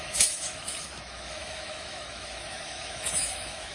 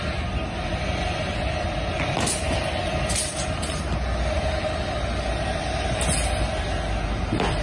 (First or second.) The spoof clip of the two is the first